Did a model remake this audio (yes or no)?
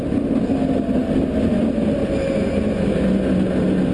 no